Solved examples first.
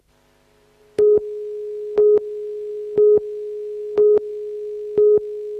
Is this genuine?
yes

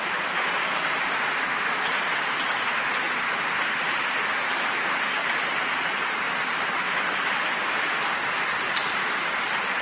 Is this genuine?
yes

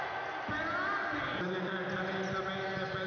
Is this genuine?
yes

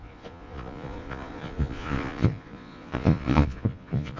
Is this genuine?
no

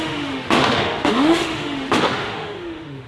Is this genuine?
no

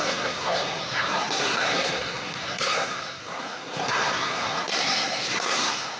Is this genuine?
no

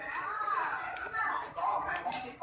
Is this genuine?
no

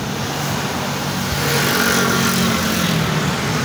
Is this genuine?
yes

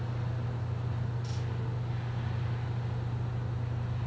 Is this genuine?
yes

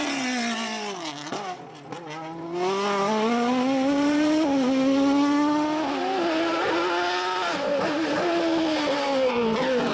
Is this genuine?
yes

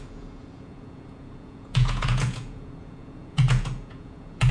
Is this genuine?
no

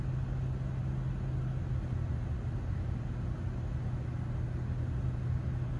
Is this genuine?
yes